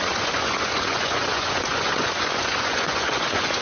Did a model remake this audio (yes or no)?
yes